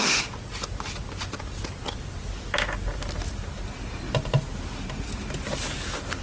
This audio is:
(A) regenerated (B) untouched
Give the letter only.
B